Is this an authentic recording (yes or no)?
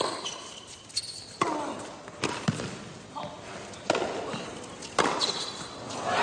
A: yes